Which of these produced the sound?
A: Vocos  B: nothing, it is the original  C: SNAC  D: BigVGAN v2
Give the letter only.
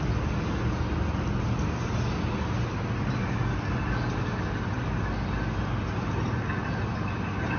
B